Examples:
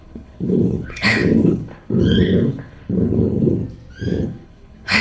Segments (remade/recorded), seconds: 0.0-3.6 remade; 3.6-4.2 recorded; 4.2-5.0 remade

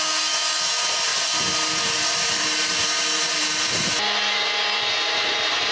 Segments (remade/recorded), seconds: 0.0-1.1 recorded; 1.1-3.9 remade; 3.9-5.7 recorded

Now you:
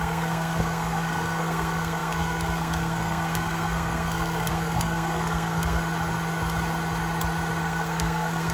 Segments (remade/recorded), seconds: 0.0-5.8 remade; 5.8-7.6 recorded; 7.6-8.5 remade

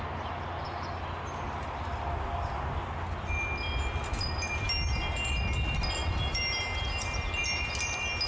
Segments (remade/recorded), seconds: 0.0-6.0 recorded; 6.0-6.6 remade; 6.6-8.3 recorded

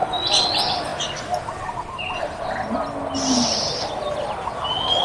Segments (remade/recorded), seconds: 0.0-5.0 recorded

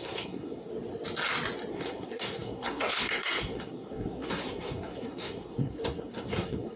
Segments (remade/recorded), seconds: 0.0-0.7 remade; 0.7-1.7 recorded; 1.7-6.8 remade

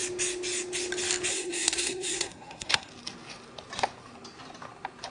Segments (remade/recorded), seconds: 0.0-1.3 recorded; 1.3-2.9 remade; 2.9-5.1 recorded

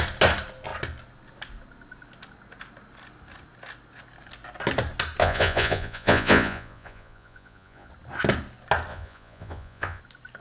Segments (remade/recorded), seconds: 0.0-5.2 recorded; 5.2-7.9 remade; 7.9-8.9 recorded; 8.9-10.0 remade; 10.0-10.4 recorded